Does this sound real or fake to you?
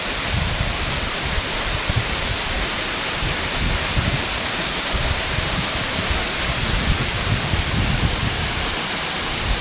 fake